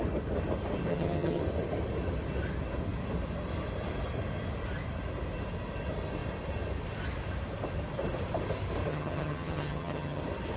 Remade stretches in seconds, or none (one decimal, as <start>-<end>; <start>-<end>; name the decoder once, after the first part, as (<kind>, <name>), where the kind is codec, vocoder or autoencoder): 0.9-1.4 (vocoder, HiFi-GAN); 8.9-10.2